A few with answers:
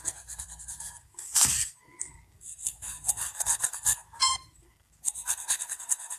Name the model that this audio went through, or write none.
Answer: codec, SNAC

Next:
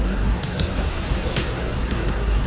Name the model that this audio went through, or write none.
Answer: codec, SNAC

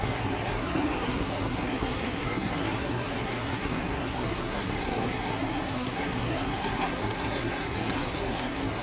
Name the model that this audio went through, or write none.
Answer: codec, SNAC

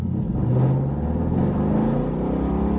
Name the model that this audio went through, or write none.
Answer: none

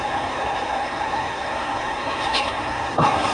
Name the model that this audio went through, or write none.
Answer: codec, SNAC